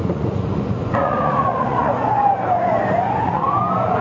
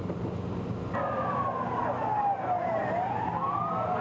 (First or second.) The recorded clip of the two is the second